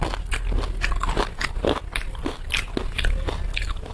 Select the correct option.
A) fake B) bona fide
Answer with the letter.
B